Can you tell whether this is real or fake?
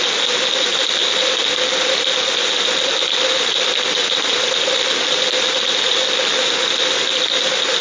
real